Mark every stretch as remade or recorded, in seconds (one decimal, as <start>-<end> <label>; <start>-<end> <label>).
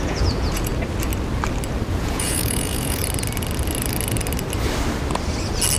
0.0-0.7 remade; 0.7-1.9 recorded; 1.9-3.0 remade; 3.0-5.8 recorded